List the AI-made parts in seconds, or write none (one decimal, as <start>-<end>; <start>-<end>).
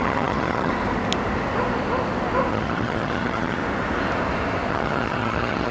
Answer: 0.0-0.7; 2.5-3.6; 4.7-5.7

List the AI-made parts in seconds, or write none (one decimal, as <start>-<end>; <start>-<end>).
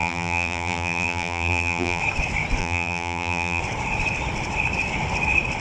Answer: 0.0-2.0; 2.6-3.6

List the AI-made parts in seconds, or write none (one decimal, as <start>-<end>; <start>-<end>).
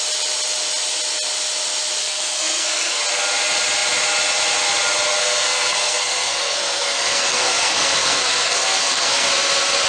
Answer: 2.0-3.0; 5.2-9.3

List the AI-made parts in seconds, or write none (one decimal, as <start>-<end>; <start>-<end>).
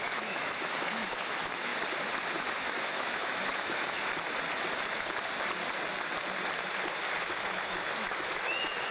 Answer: 0.0-1.7; 2.4-4.0; 7.2-8.9